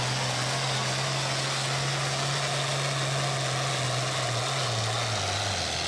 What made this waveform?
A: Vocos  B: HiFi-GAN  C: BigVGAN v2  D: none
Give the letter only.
D